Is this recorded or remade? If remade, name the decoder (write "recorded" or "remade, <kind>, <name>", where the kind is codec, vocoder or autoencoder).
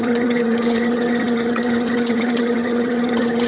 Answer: remade, vocoder, HiFi-GAN